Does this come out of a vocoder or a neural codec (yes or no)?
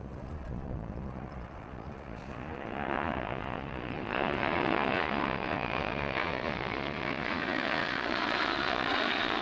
yes